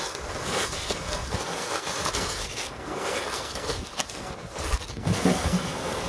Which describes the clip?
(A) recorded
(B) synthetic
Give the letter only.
B